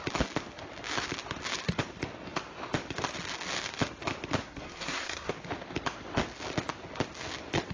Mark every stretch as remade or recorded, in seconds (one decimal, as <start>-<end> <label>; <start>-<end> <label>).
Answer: 0.0-4.4 recorded; 4.4-5.3 remade; 5.3-7.7 recorded